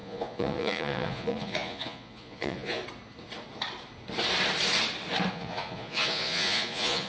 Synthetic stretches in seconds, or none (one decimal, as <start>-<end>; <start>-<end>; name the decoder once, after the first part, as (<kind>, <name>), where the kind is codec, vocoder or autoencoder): 0.0-2.8 (vocoder, Vocos); 5.3-7.1